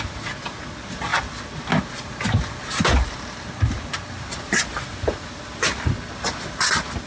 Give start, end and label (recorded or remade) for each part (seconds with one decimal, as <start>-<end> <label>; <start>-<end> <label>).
0.0-7.1 recorded